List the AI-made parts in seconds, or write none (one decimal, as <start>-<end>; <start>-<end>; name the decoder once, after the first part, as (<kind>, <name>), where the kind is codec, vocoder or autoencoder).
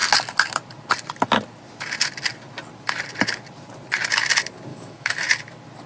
4.7-5.2 (autoencoder, DAC-VAE)